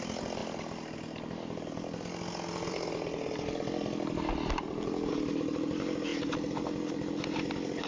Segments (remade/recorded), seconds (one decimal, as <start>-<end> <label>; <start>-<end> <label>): 0.0-7.9 recorded